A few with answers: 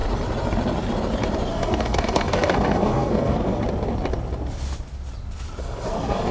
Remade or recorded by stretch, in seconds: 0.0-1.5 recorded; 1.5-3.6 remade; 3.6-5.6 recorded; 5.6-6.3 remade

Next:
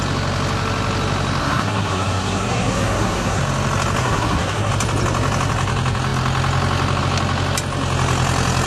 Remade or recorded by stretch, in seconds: 0.0-1.4 recorded; 1.4-3.4 remade; 3.4-4.0 recorded; 4.0-4.7 remade; 4.7-8.7 recorded